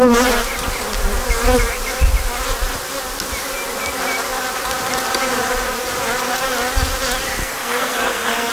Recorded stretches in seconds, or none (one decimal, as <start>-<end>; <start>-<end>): 0.0-7.4